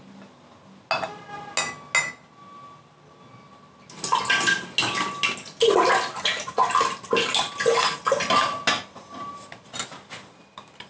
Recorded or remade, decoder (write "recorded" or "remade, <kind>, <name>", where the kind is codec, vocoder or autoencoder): recorded